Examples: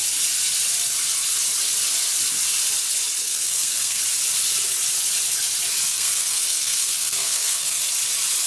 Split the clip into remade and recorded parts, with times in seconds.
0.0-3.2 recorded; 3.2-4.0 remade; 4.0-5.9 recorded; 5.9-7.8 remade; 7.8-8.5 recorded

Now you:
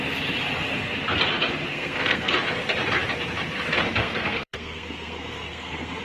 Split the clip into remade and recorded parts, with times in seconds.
0.0-1.7 recorded; 1.7-2.3 remade; 2.3-4.0 recorded; 4.0-6.0 remade